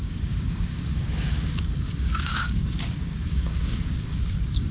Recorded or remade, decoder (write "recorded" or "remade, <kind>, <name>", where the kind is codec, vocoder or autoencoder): remade, codec, DAC